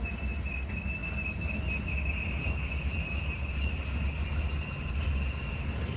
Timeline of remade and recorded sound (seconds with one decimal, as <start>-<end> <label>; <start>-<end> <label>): 0.0-6.0 recorded